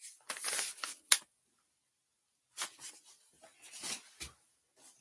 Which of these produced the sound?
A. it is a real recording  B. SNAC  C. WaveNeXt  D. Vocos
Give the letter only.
A